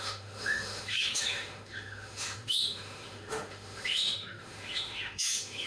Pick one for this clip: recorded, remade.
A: remade